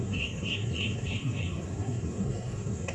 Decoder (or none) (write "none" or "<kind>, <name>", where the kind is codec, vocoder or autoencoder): codec, SNAC